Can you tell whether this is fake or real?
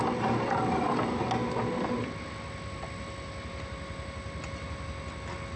real